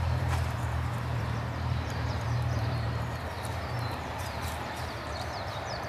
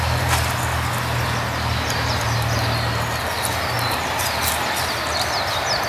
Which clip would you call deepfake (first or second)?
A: first